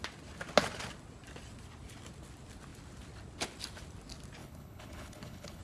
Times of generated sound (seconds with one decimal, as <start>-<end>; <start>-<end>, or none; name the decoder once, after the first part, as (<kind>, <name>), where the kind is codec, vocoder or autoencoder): 4.4-5.6 (codec, HILCodec)